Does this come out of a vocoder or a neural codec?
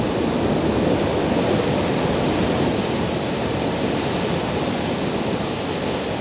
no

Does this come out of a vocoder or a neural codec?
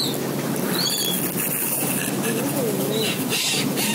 no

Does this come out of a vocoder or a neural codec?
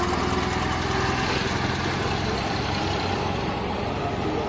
no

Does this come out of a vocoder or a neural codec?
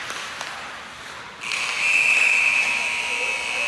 no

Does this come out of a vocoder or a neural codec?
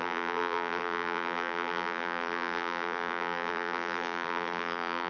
yes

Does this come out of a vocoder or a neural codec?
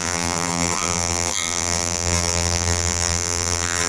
yes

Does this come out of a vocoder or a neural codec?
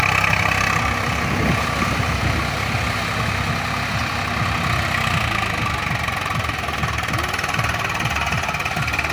no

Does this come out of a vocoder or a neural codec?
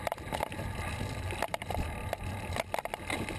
no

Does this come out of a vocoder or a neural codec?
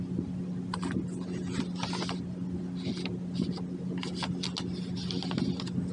no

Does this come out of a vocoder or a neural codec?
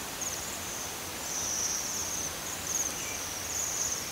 yes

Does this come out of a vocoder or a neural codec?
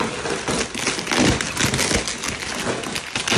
no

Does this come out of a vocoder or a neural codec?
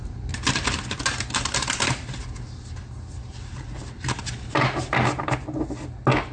no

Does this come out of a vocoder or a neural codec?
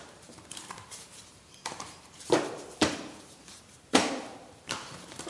yes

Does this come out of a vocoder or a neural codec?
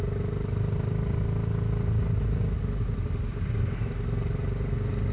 no